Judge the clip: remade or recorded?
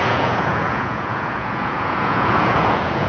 remade